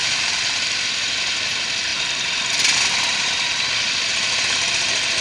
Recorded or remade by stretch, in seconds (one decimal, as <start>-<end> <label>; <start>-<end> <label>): 0.0-5.2 recorded